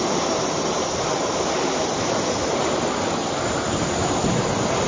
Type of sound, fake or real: real